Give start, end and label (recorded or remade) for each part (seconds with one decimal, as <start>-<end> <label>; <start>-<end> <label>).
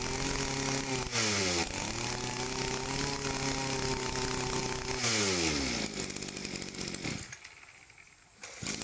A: 0.0-8.8 recorded